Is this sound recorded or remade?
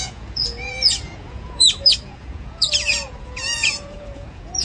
remade